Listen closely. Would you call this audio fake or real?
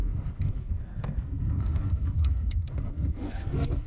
fake